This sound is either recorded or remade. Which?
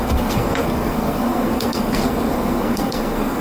remade